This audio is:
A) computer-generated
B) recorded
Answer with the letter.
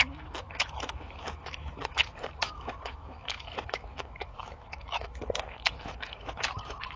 A